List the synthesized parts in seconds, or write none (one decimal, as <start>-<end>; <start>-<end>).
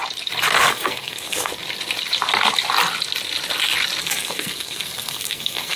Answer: 0.7-1.5; 4.0-5.8